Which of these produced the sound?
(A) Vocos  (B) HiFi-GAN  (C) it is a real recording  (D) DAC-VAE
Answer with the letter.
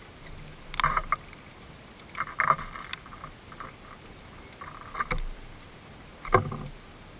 C